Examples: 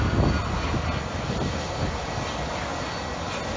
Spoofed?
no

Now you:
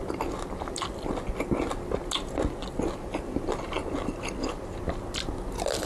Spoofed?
no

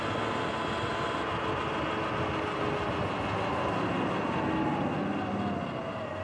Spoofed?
no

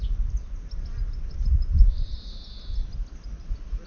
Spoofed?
no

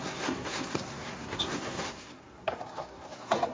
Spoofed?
yes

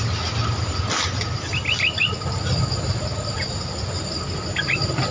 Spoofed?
no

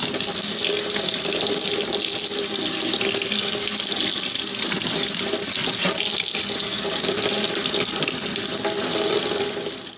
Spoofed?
no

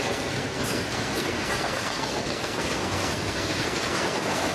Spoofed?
yes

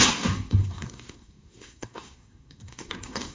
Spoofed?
yes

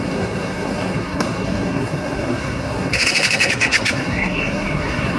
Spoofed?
yes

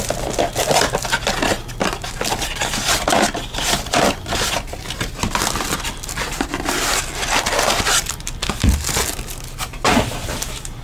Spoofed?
no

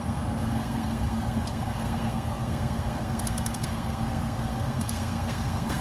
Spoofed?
yes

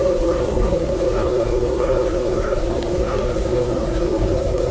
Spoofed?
yes